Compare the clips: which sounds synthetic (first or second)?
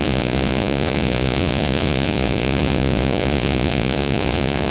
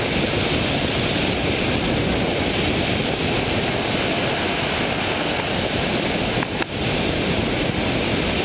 first